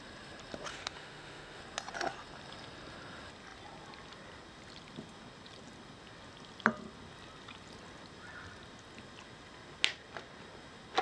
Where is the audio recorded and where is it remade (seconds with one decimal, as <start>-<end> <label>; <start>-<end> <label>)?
0.0-0.7 recorded; 0.7-1.6 remade; 1.6-11.0 recorded